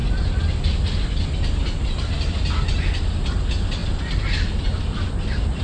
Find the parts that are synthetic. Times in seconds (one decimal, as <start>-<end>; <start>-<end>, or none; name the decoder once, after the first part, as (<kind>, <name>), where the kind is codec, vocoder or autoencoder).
none